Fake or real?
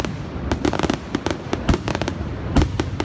real